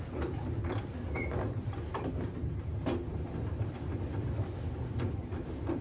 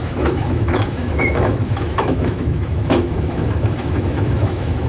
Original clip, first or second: first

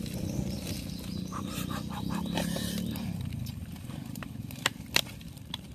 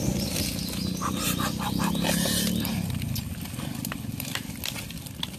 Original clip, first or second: second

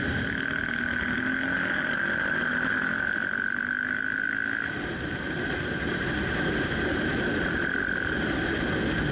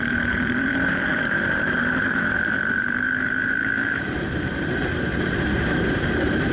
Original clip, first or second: first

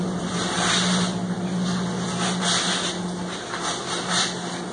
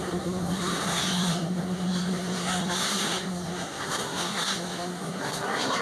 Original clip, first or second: first